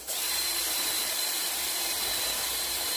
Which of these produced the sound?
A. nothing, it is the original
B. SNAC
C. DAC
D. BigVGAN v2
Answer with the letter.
D